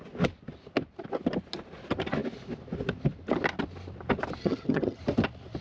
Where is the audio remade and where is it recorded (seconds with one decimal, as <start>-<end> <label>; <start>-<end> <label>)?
0.0-4.4 recorded; 4.4-5.0 remade; 5.0-5.6 recorded